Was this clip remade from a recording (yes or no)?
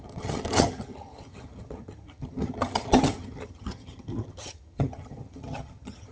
yes